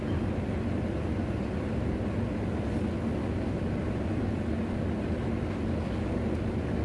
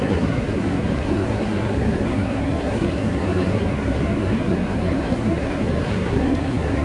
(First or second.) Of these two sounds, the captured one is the first